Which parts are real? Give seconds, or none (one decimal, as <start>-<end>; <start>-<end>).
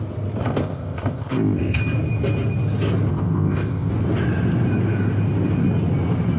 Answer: 0.0-0.4; 1.8-3.1; 3.9-6.4